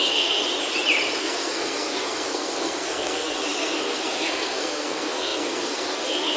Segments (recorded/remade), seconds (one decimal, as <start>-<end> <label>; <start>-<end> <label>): 0.0-0.4 remade; 0.4-1.2 recorded; 1.2-6.4 remade